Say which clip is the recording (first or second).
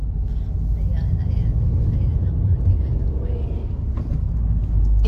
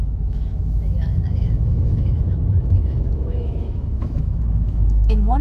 first